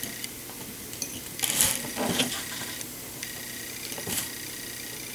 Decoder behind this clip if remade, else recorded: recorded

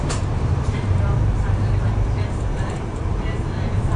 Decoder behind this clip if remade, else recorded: remade, vocoder, BigVGAN v2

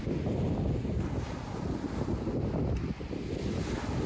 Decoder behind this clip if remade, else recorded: recorded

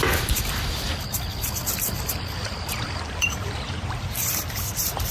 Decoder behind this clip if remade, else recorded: remade, vocoder, BigVGAN v2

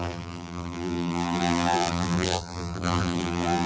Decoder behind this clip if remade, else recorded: remade, vocoder, BigVGAN v2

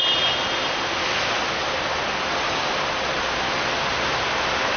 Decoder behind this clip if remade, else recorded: recorded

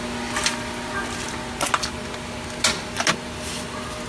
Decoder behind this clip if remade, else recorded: recorded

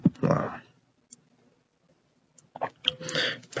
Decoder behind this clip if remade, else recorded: recorded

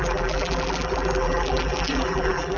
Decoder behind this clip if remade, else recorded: remade, vocoder, BigVGAN v2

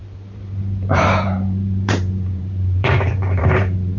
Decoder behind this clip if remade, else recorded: remade, vocoder, BigVGAN v2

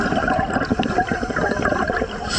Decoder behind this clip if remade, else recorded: recorded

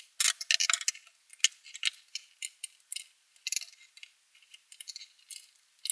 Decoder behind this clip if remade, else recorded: recorded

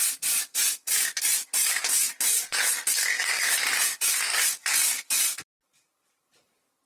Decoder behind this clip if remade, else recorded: recorded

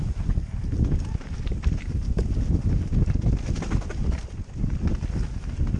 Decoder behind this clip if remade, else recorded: recorded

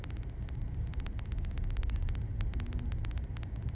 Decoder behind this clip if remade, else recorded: recorded